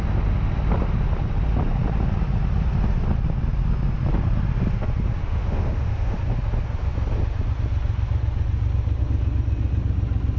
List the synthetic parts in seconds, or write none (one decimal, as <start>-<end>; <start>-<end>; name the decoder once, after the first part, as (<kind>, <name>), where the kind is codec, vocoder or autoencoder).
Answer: 5.2-6.2 (autoencoder, DAC-VAE)